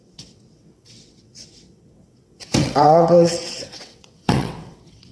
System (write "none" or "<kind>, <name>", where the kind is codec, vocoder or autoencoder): vocoder, WaveNeXt